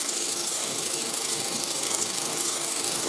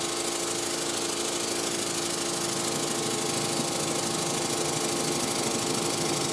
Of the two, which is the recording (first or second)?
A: second